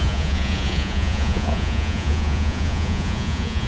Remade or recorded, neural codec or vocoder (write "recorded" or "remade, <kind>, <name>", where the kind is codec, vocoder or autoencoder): remade, vocoder, Vocos